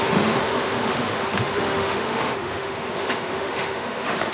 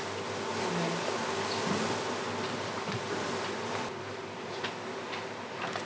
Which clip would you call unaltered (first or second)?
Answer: second